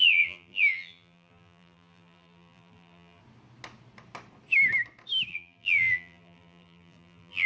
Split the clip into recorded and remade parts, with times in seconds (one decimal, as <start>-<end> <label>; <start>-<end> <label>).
0.0-3.2 remade; 3.2-5.3 recorded; 5.3-7.5 remade